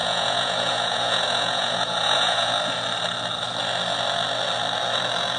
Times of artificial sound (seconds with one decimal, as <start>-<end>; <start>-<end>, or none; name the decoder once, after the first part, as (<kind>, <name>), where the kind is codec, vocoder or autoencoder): 0.0-2.6 (vocoder, Vocos)